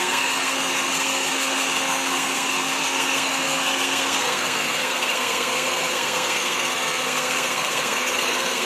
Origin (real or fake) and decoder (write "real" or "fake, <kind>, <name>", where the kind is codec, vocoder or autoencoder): fake, codec, SNAC